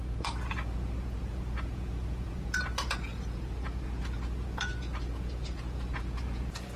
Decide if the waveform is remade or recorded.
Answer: remade